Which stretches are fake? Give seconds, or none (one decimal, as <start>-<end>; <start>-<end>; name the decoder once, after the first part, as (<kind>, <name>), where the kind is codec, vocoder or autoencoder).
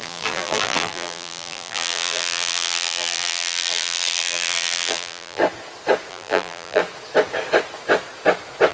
0.0-5.4 (vocoder, BigVGAN v2); 6.1-6.8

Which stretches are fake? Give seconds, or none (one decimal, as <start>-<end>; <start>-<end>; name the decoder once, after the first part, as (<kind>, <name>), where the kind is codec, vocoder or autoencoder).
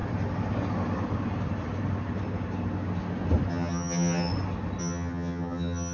3.5-4.3 (vocoder, HiFi-GAN); 4.8-5.9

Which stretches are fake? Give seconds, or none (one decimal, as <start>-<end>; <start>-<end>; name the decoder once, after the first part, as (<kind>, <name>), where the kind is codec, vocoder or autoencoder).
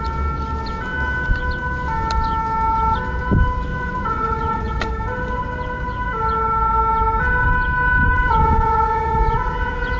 3.7-4.8 (vocoder, Vocos); 8.0-9.4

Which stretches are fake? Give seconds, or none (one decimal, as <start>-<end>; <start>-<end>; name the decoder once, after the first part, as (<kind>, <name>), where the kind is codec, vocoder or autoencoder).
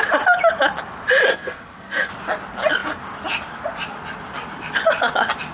1.3-2.1 (codec, SNAC)